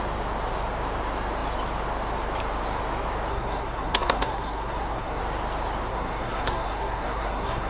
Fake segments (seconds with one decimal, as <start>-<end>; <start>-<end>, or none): 3.3-5.2; 5.9-7.7